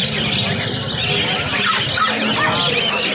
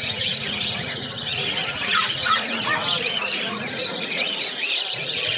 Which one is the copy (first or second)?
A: second